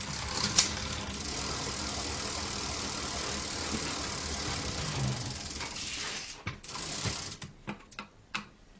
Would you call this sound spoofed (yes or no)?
no